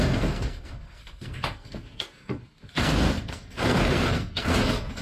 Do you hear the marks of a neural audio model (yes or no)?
yes